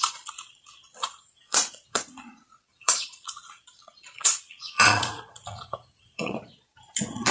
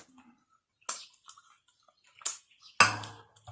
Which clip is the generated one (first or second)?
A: first